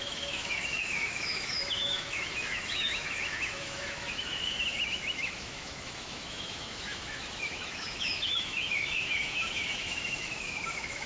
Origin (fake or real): fake